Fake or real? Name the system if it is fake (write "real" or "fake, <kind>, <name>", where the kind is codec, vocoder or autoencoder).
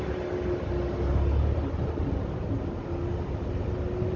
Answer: real